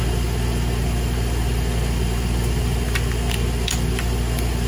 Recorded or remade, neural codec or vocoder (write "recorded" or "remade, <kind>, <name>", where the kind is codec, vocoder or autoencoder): recorded